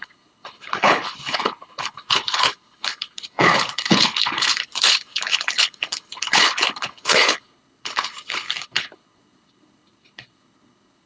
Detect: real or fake fake